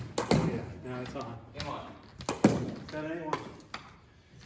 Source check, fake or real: real